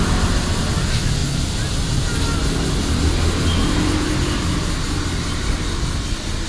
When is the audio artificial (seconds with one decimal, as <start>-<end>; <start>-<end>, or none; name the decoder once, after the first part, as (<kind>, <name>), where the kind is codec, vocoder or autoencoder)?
none